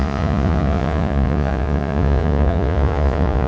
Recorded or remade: remade